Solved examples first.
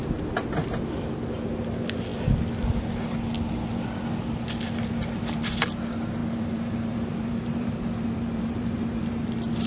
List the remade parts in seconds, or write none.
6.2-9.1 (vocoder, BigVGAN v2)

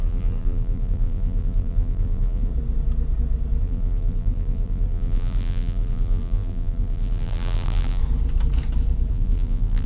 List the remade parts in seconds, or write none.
0.0-2.5 (vocoder, BigVGAN v2); 3.6-8.0; 9.1-9.9

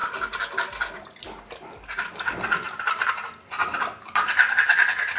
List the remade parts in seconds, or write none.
none

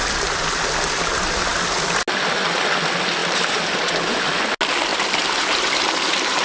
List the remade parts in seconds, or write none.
3.2-4.4 (vocoder, BigVGAN v2); 4.9-6.4